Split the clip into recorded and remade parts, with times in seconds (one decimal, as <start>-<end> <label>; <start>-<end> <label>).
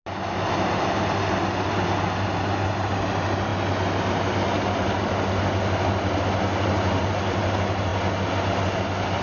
0.0-9.2 recorded